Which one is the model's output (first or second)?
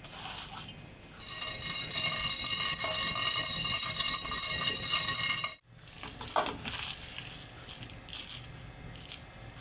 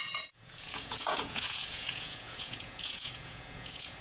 second